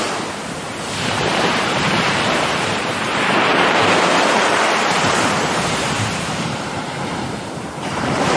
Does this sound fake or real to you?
fake